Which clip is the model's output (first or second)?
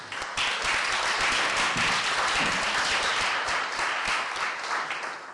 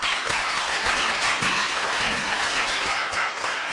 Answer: second